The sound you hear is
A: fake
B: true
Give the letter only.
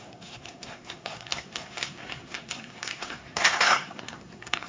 A